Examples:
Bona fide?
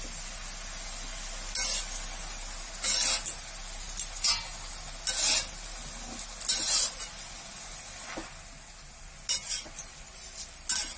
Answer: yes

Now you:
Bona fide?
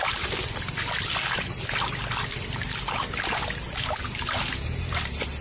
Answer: yes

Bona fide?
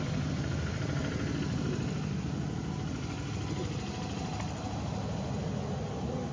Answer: yes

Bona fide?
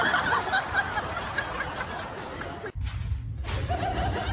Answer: yes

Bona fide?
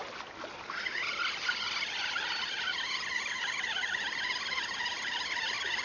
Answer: yes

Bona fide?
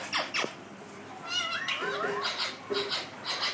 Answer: yes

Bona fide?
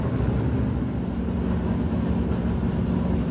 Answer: yes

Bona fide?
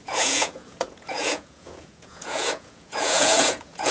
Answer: no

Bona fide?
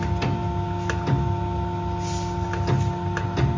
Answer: yes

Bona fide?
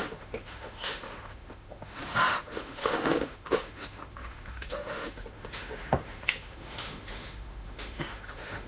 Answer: no